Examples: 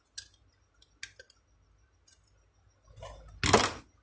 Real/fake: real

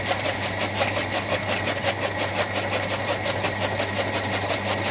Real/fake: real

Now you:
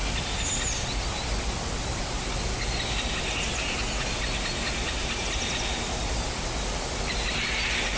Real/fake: real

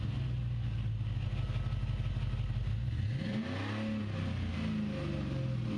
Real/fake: real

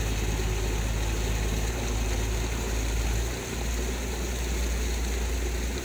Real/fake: real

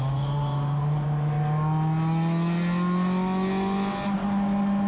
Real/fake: real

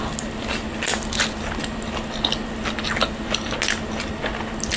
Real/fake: real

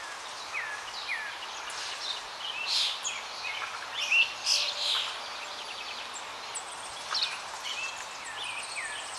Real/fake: real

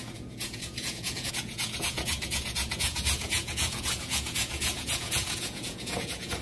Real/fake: fake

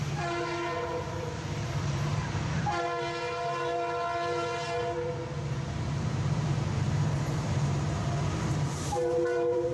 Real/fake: fake